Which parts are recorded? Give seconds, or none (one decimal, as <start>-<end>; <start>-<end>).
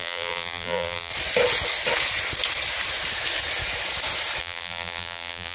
1.1-4.4